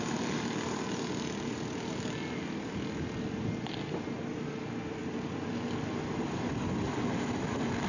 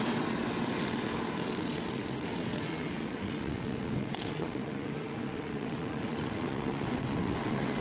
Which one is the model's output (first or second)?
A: second